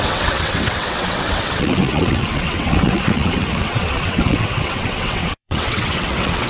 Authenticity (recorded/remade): remade